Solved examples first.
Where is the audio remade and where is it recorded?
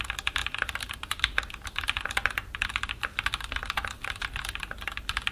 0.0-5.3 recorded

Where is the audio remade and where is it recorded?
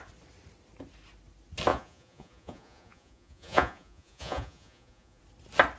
0.0-1.7 recorded; 1.7-5.2 remade; 5.2-5.8 recorded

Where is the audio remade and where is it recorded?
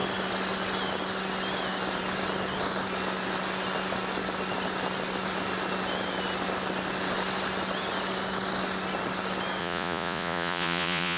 0.0-9.6 recorded; 9.6-11.2 remade